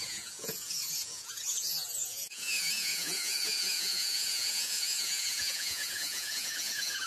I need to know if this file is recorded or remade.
remade